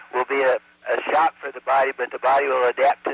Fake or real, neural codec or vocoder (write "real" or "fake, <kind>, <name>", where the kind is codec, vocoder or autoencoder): real